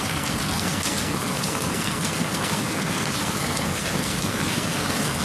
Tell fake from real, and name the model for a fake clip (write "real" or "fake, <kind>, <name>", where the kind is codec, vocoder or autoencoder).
fake, codec, SNAC